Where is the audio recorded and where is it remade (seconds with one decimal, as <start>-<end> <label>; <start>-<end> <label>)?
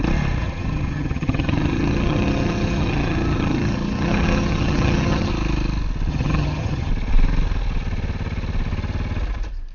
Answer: 0.0-0.4 recorded; 0.4-5.3 remade; 5.3-6.1 recorded; 6.1-6.9 remade; 6.9-9.7 recorded